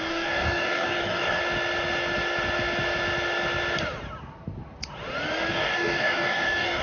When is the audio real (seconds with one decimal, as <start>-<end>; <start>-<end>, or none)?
1.4-5.5